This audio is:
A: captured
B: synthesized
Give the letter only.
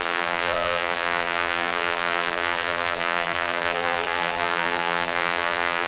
B